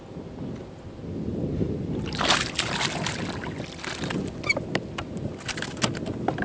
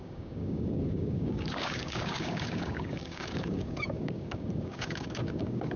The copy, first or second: second